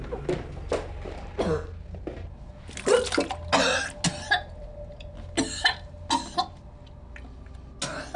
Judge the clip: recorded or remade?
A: recorded